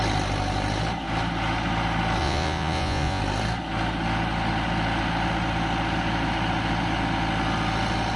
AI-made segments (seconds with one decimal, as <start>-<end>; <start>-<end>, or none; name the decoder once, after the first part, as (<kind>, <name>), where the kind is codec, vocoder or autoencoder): 2.2-3.2 (vocoder, Vocos)